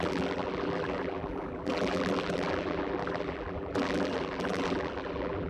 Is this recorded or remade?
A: remade